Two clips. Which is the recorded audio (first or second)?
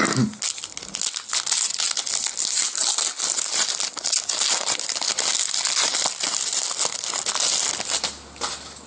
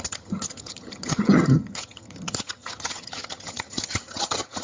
first